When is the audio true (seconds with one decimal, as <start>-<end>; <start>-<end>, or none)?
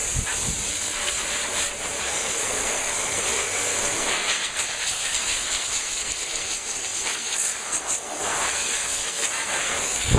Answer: 0.0-0.7; 1.4-2.0